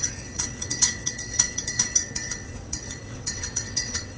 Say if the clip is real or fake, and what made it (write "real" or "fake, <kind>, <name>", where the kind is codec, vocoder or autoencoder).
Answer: fake, vocoder, WaveNeXt